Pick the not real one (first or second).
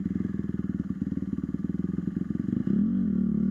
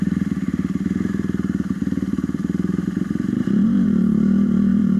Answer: second